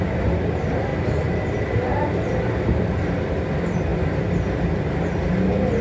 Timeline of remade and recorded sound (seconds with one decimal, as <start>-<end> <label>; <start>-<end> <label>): 0.0-5.8 recorded